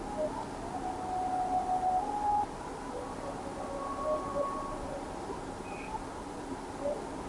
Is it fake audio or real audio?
real